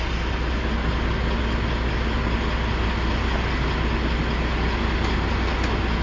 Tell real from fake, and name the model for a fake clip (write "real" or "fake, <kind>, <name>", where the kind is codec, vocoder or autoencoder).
real